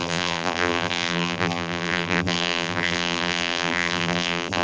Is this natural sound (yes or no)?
no